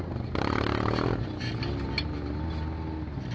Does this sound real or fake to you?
real